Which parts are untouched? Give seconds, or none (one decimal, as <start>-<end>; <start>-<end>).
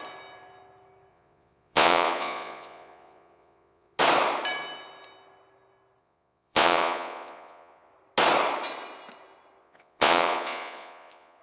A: 0.0-1.1; 4.0-6.0; 7.9-9.6